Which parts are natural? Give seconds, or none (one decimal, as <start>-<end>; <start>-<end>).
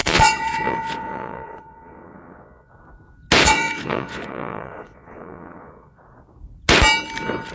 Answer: 2.7-3.4; 6.0-7.5